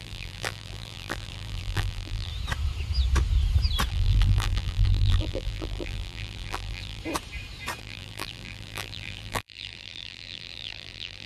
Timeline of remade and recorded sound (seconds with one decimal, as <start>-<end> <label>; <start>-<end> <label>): 0.0-2.3 remade; 2.3-3.9 recorded; 3.9-7.0 remade; 7.0-7.8 recorded; 7.8-11.3 remade